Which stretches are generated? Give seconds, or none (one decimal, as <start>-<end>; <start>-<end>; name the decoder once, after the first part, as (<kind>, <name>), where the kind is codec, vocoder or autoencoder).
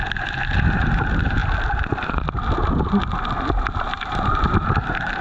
0.0-1.4 (vocoder, BigVGAN v2); 3.8-5.2